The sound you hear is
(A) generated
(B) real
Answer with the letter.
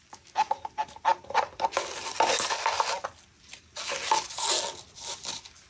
B